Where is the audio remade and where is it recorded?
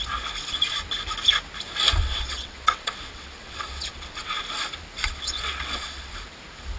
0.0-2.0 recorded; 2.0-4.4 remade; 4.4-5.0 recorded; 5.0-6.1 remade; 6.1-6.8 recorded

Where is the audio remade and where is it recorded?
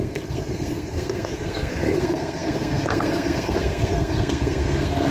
0.0-5.1 remade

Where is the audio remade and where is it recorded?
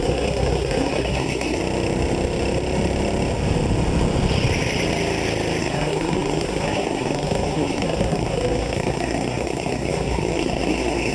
0.0-1.6 remade; 1.6-5.6 recorded; 5.6-11.1 remade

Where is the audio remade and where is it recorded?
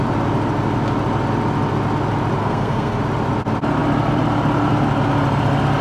0.0-2.4 recorded; 2.4-3.0 remade; 3.0-5.8 recorded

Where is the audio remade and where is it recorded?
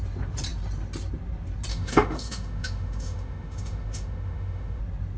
0.0-1.7 recorded; 1.7-4.8 remade; 4.8-5.2 recorded